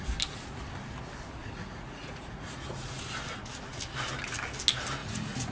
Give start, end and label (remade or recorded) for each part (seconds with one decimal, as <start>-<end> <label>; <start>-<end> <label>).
0.0-1.4 recorded; 1.4-3.0 remade; 3.0-5.0 recorded; 5.0-5.5 remade